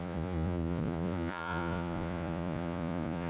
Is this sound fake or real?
fake